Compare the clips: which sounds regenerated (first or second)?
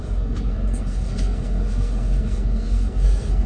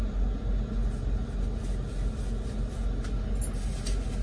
first